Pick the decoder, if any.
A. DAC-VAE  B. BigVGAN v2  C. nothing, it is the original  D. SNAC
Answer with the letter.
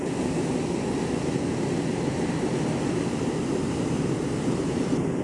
C